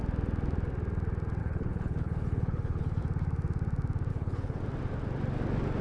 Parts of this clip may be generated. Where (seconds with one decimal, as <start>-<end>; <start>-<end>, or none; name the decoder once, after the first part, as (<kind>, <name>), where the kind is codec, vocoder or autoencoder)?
1.4-3.0 (codec, HILCodec); 4.1-4.6